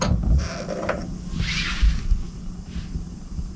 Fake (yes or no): no